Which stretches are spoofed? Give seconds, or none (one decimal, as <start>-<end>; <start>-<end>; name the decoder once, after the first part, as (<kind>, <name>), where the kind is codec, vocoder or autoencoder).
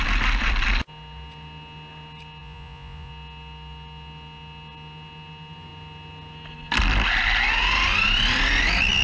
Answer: 2.4-3.1 (vocoder, Vocos)